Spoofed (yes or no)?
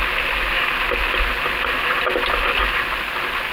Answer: no